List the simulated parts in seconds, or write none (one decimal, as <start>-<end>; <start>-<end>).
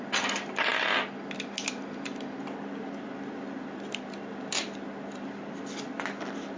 none